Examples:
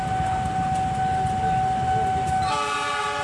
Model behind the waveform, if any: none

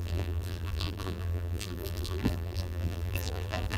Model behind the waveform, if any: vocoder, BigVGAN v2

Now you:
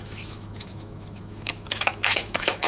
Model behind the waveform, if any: autoencoder, DAC-VAE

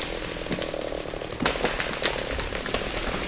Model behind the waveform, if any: none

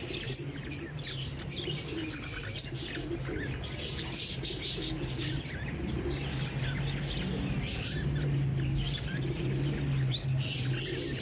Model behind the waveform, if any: none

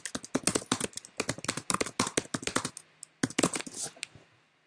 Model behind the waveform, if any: none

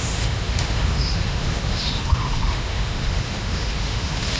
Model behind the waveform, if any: autoencoder, DAC-VAE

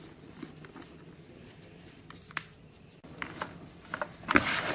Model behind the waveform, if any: vocoder, BigVGAN v2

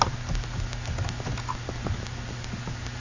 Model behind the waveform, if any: none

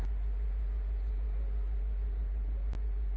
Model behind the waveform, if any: none